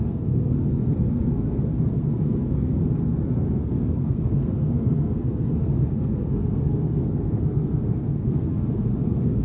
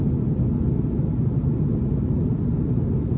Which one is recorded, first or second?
second